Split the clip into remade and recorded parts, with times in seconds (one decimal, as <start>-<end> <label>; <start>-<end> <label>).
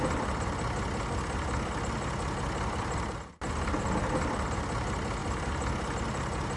0.0-6.6 recorded